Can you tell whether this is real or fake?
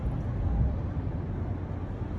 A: real